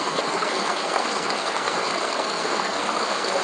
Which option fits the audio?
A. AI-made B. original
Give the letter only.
A